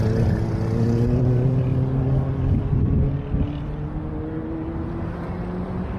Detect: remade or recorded recorded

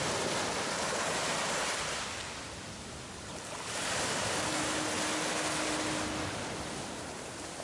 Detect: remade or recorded recorded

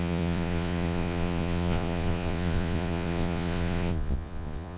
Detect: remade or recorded remade